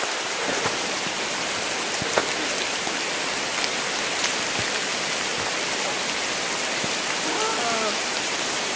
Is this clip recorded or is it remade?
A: recorded